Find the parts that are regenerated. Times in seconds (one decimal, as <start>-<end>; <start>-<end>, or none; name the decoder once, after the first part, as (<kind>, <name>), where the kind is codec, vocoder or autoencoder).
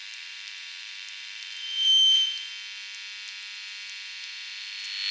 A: 0.0-2.5 (vocoder, BigVGAN v2)